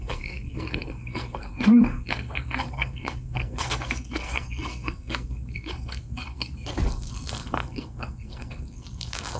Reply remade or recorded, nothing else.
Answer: remade